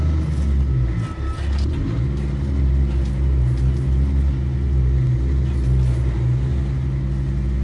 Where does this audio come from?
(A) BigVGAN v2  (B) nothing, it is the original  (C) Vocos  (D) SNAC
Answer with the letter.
B